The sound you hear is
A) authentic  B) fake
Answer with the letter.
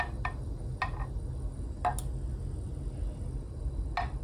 A